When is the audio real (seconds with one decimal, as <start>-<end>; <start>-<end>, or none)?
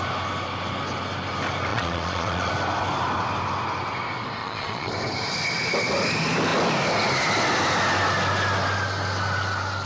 0.0-1.7; 2.5-4.4; 4.9-9.9